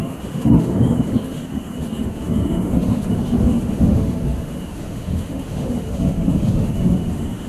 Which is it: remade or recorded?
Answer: remade